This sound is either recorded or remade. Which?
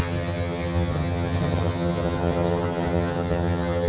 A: remade